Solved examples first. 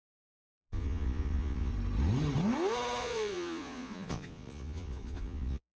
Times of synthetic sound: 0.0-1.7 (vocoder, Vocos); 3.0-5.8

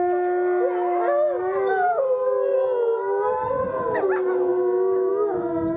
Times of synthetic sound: none